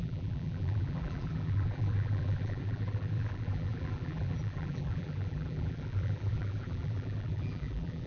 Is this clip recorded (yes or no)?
no